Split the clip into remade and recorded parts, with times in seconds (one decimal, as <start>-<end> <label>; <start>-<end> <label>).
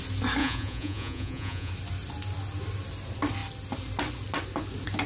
0.0-0.4 recorded; 0.4-1.7 remade; 1.7-5.1 recorded